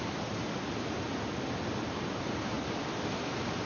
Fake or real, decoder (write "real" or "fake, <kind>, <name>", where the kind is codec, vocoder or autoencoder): real